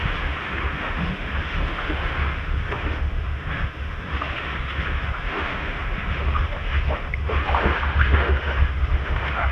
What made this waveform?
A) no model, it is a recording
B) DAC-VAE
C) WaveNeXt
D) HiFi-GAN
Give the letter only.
B